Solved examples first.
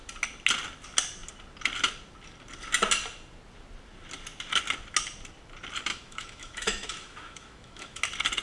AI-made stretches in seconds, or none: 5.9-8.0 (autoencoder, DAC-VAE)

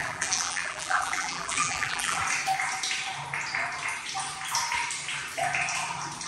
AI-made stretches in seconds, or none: 0.0-2.2 (vocoder, BigVGAN v2)

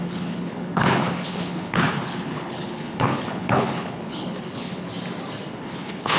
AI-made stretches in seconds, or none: 0.0-4.9 (codec, HILCodec); 5.5-6.2

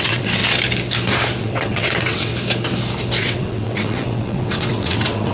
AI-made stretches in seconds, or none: 0.0-0.4 (vocoder, WaveNeXt); 1.4-2.3; 3.2-5.3